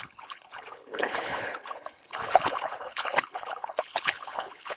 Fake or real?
fake